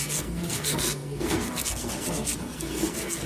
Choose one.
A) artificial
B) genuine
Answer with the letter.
A